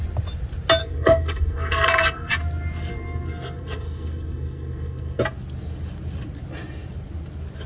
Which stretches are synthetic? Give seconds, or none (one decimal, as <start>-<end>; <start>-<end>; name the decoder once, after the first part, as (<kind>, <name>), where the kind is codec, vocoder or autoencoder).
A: 0.8-2.3 (codec, SNAC); 2.9-5.2